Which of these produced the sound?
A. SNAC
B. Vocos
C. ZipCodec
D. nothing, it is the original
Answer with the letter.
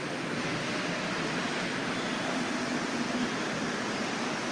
D